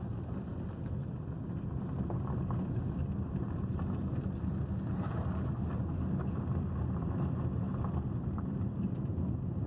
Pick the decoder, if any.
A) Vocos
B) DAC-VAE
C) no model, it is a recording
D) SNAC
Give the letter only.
C